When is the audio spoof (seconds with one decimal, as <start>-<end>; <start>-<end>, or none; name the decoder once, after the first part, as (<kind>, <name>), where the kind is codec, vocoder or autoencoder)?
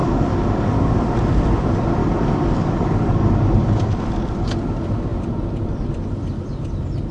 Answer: 0.0-0.9 (codec, DAC); 2.0-3.8